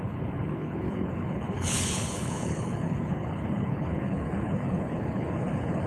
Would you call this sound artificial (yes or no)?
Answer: yes